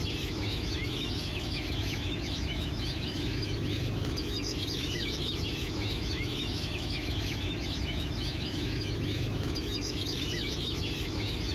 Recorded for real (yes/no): no